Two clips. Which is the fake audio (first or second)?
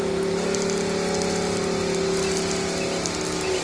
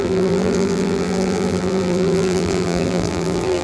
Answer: second